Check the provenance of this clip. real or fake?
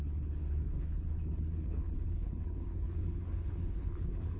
fake